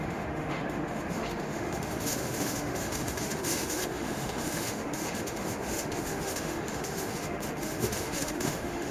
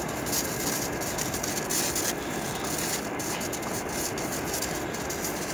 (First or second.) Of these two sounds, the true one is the second